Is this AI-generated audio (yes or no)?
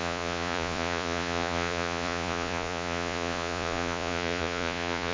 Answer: yes